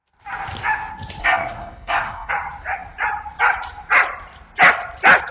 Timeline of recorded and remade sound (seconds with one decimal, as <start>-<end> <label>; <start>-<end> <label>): 0.0-1.2 recorded; 1.2-2.3 remade; 2.3-5.3 recorded